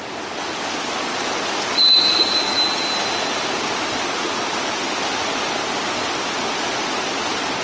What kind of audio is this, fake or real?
real